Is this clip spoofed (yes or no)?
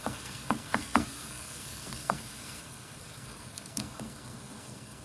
yes